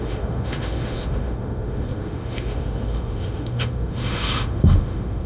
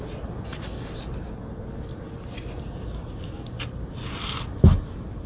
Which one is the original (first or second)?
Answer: second